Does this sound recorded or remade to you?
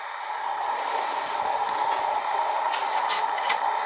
recorded